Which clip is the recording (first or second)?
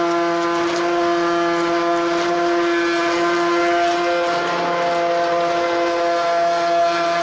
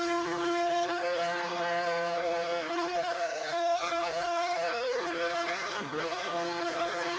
first